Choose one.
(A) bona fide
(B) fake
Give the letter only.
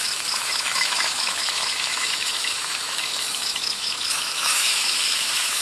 B